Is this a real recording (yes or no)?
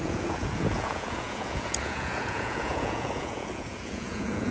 no